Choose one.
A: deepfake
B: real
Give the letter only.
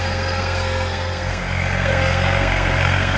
A